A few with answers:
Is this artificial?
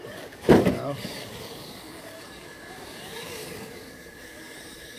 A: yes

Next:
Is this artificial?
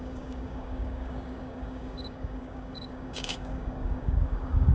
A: yes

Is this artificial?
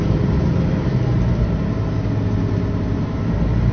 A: no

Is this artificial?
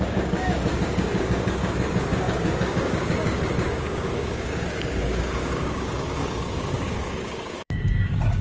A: yes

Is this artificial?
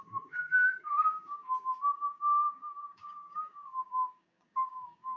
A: yes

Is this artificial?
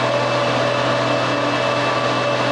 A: no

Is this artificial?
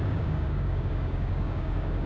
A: yes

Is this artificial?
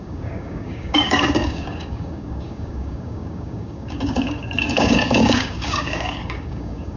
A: yes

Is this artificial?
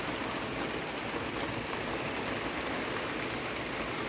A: no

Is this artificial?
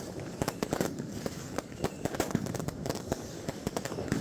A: yes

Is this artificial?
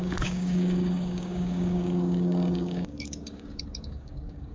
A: yes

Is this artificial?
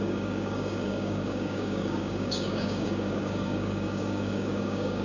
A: yes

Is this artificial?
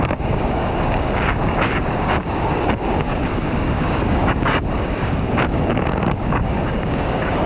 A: yes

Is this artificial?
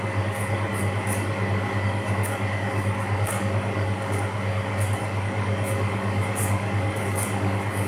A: yes